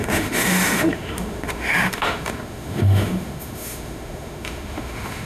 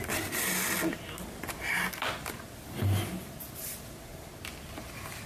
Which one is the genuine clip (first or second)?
second